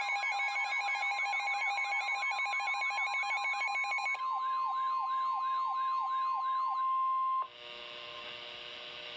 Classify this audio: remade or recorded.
recorded